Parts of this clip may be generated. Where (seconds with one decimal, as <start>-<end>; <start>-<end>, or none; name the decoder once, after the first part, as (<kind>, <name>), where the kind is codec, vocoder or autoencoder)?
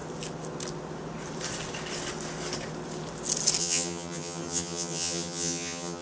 3.6-6.0 (vocoder, HiFi-GAN)